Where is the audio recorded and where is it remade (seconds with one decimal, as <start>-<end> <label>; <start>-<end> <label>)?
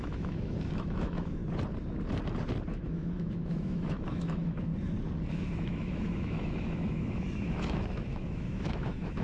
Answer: 0.0-1.4 remade; 1.4-2.7 recorded; 2.7-4.7 remade; 4.7-5.3 recorded; 5.3-9.2 remade